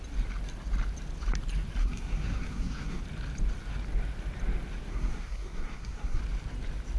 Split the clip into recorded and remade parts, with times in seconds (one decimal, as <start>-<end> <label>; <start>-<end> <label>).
0.0-1.8 recorded; 1.8-3.0 remade; 3.0-4.9 recorded; 4.9-6.2 remade; 6.2-7.0 recorded